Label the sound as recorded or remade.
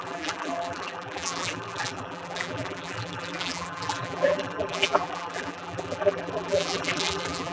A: remade